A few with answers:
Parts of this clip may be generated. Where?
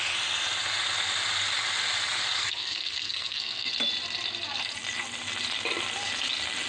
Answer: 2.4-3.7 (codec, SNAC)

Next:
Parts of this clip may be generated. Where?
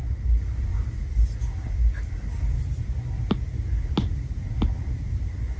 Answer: none